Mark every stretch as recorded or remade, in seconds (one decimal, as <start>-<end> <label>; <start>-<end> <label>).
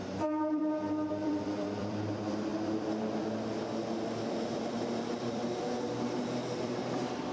0.0-0.6 remade; 0.6-1.1 recorded; 1.1-2.5 remade; 2.5-5.2 recorded; 5.2-7.3 remade